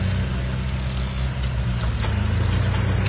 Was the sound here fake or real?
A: real